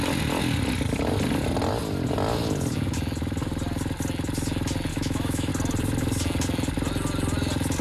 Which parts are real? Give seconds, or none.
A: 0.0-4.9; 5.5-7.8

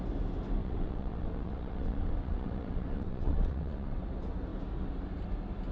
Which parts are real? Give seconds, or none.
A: 0.0-0.6; 4.0-5.7

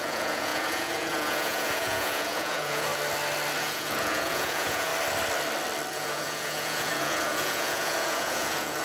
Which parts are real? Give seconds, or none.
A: 2.9-3.6; 4.9-5.9

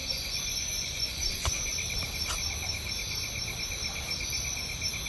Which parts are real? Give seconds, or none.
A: 1.7-5.1